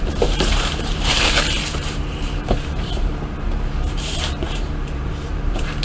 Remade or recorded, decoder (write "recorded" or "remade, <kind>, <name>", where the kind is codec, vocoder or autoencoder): remade, vocoder, BigVGAN v2